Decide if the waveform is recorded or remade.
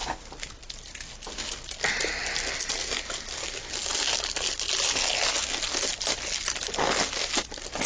recorded